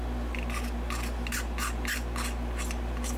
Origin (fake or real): real